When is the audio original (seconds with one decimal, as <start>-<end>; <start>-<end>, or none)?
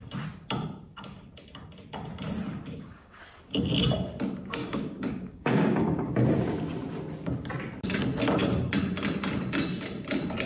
0.0-2.5; 3.2-4.6; 6.1-10.5